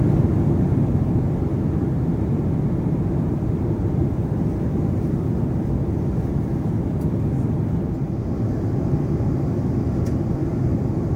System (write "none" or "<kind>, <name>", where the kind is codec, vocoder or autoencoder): none